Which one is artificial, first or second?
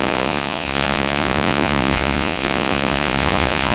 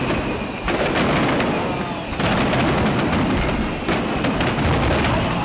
first